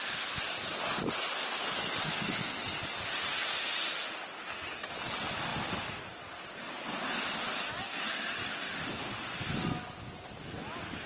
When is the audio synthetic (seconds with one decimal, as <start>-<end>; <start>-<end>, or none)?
none

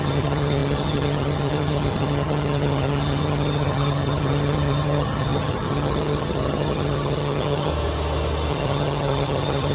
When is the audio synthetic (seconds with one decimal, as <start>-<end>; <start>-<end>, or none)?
0.0-7.7; 8.5-9.7

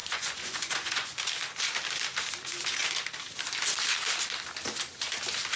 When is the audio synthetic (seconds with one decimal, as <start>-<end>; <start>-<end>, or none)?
0.0-1.3

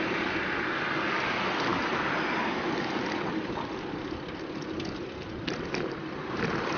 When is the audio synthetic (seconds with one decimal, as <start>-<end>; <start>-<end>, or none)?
none

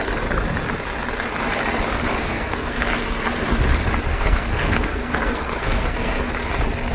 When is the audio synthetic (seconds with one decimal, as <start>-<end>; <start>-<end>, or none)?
2.2-2.9; 4.1-6.3

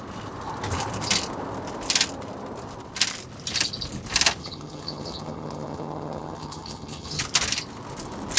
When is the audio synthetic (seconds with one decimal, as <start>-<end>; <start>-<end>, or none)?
4.4-7.2

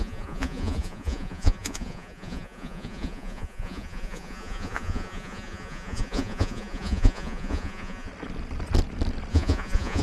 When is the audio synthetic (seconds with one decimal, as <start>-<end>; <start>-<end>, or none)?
0.0-8.1; 9.3-10.0